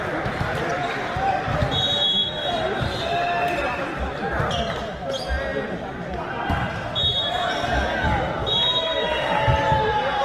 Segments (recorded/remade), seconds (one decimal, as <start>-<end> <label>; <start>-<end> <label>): 0.0-2.2 recorded; 2.2-3.0 remade; 3.0-10.2 recorded